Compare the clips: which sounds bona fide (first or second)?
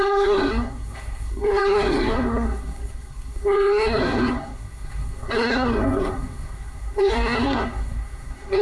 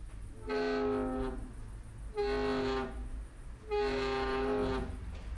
second